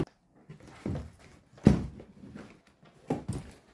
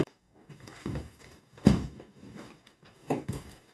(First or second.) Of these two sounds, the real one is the first